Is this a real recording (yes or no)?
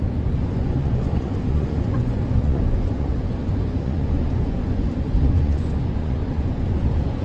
no